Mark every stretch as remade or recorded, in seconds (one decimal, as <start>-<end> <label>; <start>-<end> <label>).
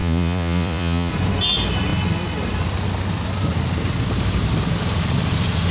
0.0-1.1 remade; 1.1-5.7 recorded